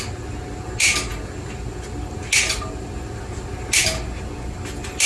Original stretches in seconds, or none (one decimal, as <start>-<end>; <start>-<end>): 0.0-5.1